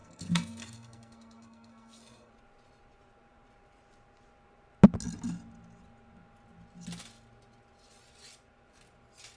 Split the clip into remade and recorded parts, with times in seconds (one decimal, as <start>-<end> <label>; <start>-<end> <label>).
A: 0.0-2.3 remade; 2.3-9.4 recorded